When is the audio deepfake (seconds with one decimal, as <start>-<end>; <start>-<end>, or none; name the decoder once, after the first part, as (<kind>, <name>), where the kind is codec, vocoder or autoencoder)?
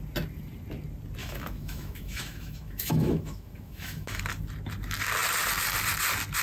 1.2-4.2 (autoencoder, DAC-VAE)